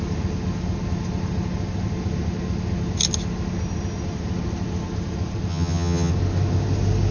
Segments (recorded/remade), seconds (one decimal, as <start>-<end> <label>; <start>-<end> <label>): 0.0-5.5 recorded; 5.5-6.1 remade; 6.1-7.1 recorded